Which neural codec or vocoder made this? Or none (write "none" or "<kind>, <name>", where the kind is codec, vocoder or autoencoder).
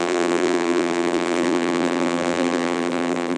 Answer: vocoder, BigVGAN v2